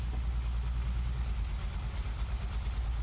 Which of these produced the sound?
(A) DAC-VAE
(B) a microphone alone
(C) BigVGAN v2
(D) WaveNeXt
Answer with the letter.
B